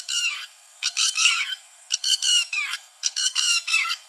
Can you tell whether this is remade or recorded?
remade